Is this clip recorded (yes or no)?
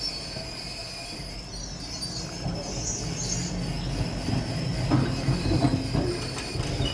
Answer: yes